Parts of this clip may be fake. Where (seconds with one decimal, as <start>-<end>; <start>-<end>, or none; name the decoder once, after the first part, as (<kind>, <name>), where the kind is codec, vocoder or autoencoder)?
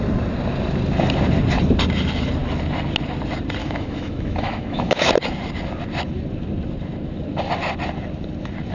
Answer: 3.6-5.1 (autoencoder, DAC-VAE)